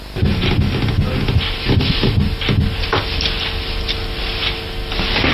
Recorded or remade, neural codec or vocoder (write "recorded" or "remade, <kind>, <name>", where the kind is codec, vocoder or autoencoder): recorded